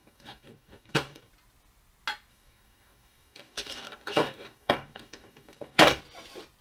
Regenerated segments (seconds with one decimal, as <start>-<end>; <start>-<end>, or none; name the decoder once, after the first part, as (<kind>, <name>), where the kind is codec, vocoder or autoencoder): 0.0-1.3 (codec, DAC); 2.3-6.0